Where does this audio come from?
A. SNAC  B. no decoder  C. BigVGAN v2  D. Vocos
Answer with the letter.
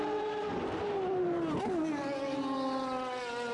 B